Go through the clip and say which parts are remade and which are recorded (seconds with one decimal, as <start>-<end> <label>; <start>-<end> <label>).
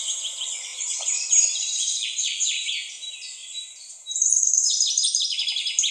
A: 0.0-0.7 recorded; 0.7-2.7 remade; 2.7-3.4 recorded; 3.4-5.3 remade; 5.3-5.9 recorded